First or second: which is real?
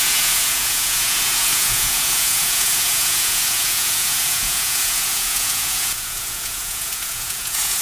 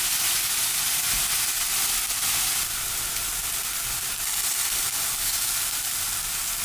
second